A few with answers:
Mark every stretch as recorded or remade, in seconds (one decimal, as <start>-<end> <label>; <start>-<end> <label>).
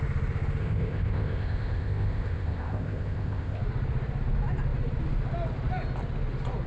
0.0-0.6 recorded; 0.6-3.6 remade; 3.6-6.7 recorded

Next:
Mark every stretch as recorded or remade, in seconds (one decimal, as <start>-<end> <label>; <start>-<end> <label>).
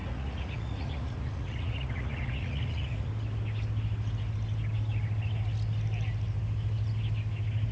0.0-3.1 remade; 3.1-7.7 recorded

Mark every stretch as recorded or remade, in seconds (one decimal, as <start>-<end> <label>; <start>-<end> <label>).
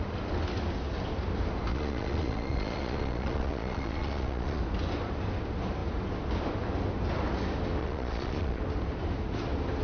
0.0-1.7 recorded; 1.7-4.6 remade; 4.6-7.8 recorded; 7.8-8.6 remade; 8.6-9.8 recorded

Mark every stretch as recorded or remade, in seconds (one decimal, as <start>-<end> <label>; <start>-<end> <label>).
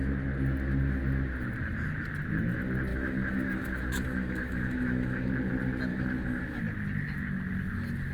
0.0-2.9 recorded; 2.9-5.3 remade; 5.3-5.9 recorded; 5.9-6.6 remade; 6.6-8.1 recorded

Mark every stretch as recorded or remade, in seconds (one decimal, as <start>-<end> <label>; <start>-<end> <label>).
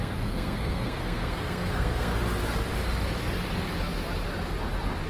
0.0-2.1 remade; 2.1-5.1 recorded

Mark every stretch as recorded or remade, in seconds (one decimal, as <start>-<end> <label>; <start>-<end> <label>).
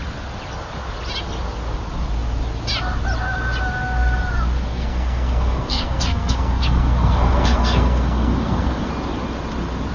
0.0-4.7 recorded; 4.7-8.9 remade; 8.9-9.9 recorded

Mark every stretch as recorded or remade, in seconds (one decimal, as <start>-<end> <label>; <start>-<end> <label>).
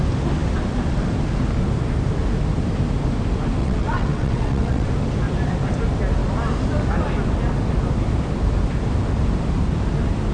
0.0-3.6 recorded; 3.6-4.9 remade; 4.9-10.3 recorded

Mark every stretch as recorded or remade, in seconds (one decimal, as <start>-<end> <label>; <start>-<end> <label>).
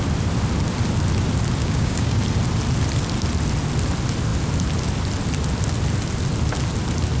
0.0-1.6 recorded; 1.6-2.2 remade; 2.2-7.2 recorded